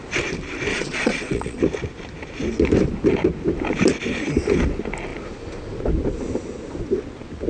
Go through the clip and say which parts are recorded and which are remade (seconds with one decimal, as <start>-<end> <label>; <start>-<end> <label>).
0.0-0.7 recorded; 0.7-1.6 remade; 1.6-7.5 recorded